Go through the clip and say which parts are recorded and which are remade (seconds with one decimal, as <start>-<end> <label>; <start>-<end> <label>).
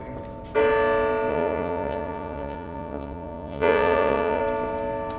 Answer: 0.0-1.3 recorded; 1.3-4.4 remade; 4.4-5.2 recorded